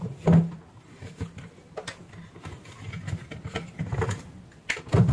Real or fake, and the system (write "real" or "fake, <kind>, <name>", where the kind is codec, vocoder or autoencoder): real